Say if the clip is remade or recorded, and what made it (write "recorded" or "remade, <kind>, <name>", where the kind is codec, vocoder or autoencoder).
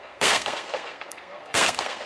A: remade, codec, SNAC